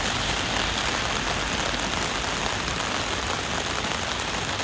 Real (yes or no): yes